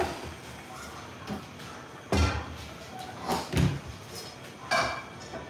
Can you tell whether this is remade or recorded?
recorded